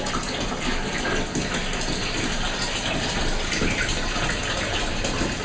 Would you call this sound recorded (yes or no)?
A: yes